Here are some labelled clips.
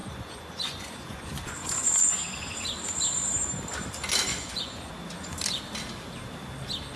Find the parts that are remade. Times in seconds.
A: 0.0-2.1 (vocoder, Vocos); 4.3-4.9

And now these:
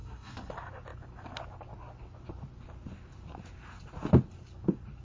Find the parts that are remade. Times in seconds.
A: 0.0-0.5 (codec, SNAC)

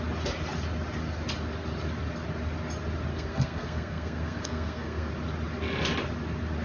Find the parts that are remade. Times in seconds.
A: 3.1-5.1 (codec, SNAC)

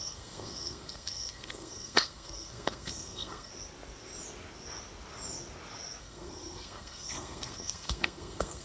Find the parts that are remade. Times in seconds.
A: 0.0-3.5 (codec, SNAC); 6.0-8.6

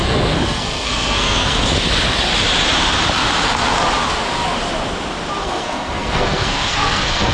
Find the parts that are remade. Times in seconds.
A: 0.0-1.7 (codec, SNAC); 5.4-7.3

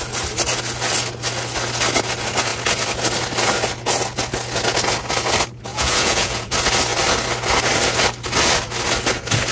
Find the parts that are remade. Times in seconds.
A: 5.7-6.5 (vocoder, Vocos)

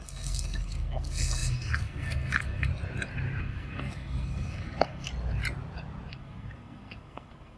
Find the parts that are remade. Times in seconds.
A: 0.0-2.7 (codec, SNAC); 3.4-5.1; 6.1-7.6

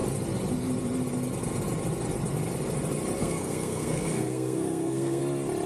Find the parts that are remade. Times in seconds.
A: 3.2-5.2 (codec, SNAC)